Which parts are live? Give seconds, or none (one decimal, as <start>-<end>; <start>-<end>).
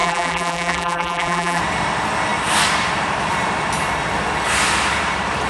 1.6-5.5